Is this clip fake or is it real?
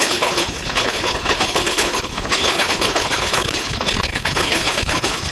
fake